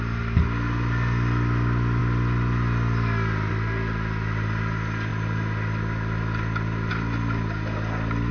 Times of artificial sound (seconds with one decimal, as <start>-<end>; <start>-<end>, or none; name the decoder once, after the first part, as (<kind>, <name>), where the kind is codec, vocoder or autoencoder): none